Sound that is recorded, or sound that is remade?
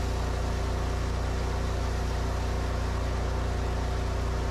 recorded